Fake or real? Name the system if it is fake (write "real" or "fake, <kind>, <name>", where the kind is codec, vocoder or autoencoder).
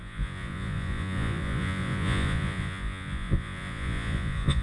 fake, vocoder, Vocos